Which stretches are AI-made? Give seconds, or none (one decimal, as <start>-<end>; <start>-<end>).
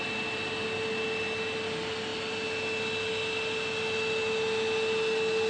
none